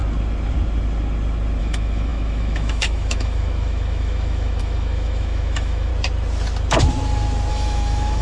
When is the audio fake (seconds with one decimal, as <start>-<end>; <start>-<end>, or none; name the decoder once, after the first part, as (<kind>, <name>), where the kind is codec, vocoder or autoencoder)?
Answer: 1.6-5.9 (autoencoder, DAC-VAE); 7.5-8.2